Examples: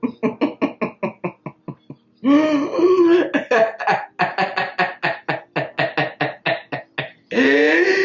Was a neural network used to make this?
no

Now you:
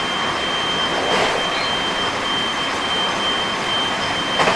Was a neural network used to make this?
no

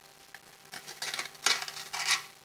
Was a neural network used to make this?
no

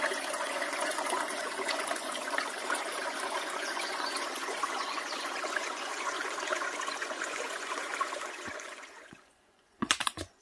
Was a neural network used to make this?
yes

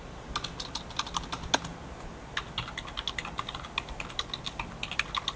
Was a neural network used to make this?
no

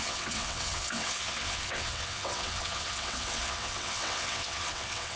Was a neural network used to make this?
yes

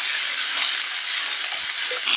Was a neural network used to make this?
no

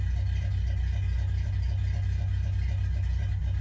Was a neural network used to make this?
no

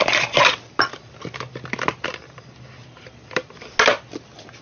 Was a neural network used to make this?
no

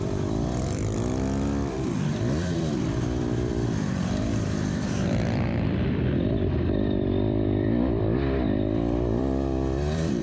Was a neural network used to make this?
yes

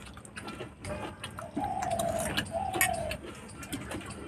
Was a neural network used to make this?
no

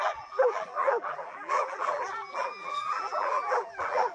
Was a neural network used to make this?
yes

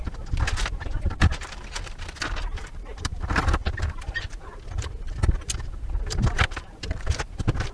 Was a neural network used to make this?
yes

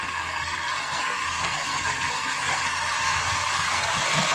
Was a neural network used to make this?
yes